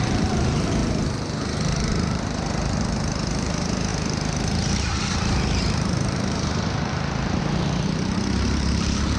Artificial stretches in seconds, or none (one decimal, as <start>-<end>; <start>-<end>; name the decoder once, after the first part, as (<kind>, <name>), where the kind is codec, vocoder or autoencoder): 0.0-0.8 (vocoder, BigVGAN v2); 1.4-9.2